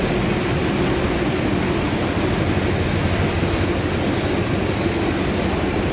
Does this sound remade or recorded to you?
recorded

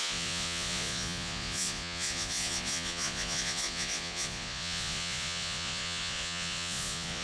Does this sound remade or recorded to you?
remade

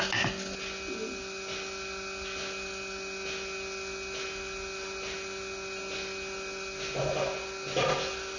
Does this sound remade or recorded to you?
recorded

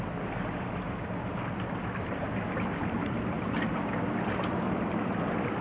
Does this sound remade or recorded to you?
recorded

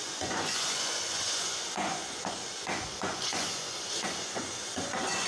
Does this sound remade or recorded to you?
remade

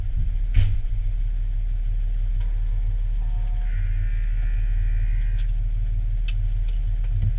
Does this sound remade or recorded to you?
recorded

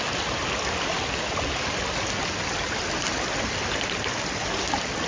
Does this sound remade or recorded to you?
recorded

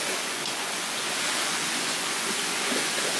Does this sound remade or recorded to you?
remade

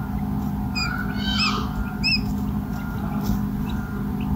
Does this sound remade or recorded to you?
recorded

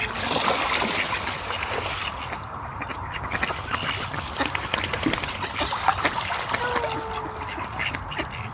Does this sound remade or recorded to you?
recorded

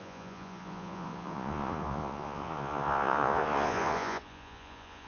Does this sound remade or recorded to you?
remade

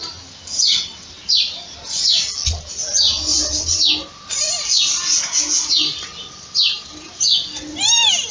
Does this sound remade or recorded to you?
recorded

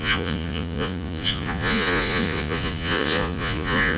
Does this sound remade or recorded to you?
remade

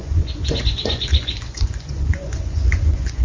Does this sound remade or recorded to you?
remade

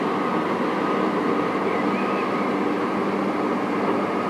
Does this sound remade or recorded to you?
recorded